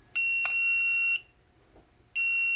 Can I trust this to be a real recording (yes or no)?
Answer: yes